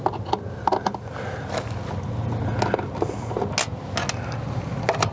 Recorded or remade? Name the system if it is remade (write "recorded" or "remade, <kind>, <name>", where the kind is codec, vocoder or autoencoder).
recorded